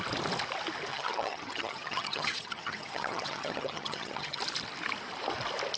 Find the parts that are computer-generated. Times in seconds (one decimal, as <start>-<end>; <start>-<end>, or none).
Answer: 0.9-4.4